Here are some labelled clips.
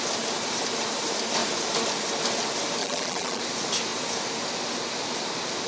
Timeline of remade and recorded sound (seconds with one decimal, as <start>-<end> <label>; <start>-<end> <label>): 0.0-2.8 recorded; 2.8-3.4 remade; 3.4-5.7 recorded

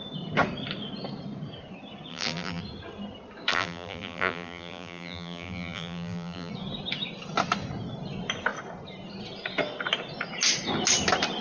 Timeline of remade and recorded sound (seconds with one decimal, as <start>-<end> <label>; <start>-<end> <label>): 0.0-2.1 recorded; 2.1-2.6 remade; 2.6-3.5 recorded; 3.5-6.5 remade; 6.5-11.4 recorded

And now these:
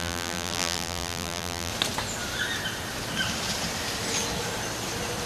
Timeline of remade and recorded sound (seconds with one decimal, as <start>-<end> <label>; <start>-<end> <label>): 0.0-1.7 remade; 1.7-5.3 recorded

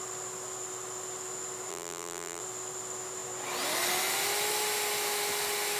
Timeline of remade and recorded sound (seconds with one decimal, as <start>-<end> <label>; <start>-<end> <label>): 0.0-1.7 recorded; 1.7-2.4 remade; 2.4-5.8 recorded